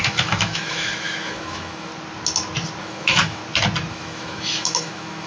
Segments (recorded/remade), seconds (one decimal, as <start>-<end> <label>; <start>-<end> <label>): 0.0-1.9 remade; 1.9-2.8 recorded; 2.8-3.4 remade; 3.4-3.9 recorded; 3.9-5.3 remade